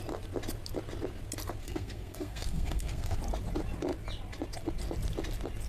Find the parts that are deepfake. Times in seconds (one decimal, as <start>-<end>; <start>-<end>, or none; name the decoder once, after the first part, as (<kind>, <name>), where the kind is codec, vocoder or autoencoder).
1.6-3.2 (codec, SNAC)